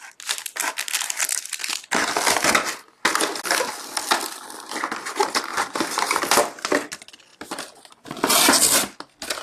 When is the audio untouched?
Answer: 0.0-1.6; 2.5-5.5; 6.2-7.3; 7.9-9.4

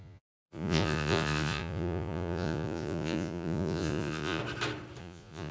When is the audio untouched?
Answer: 4.4-5.0

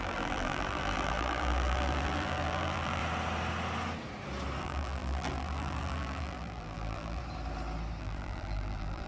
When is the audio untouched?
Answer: 3.0-4.6; 7.2-8.0

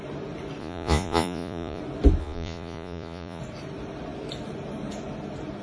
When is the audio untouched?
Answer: 0.0-0.6; 1.8-2.2; 3.4-5.6

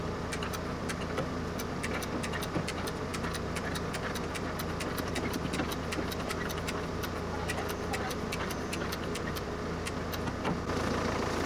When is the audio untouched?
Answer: 0.0-11.5